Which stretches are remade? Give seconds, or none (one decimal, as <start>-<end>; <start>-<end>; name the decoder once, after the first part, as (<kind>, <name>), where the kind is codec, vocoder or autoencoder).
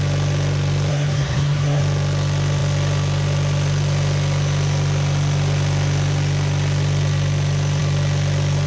0.9-1.8 (codec, SNAC)